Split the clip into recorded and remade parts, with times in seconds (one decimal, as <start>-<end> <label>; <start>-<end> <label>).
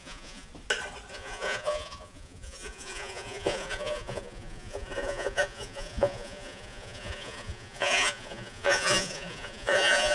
0.0-0.5 remade; 0.5-1.1 recorded; 1.1-10.1 remade